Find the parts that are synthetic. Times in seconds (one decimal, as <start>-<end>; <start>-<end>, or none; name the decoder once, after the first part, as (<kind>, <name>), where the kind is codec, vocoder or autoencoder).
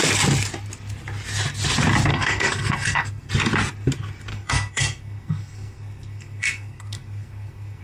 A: 2.1-3.3 (codec, SNAC); 4.3-7.8